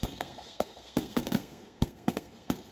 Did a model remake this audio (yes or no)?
yes